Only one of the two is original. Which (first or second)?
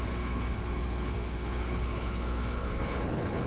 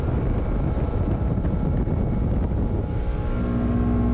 second